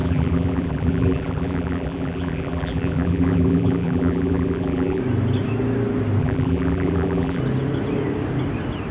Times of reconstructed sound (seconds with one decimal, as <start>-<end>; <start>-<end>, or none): 0.0-5.0; 6.2-7.4